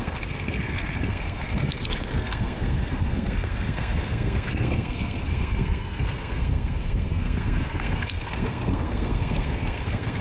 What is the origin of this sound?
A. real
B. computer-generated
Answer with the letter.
B